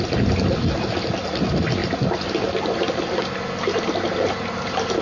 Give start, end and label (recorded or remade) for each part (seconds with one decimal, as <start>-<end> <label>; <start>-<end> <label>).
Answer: 0.0-5.0 recorded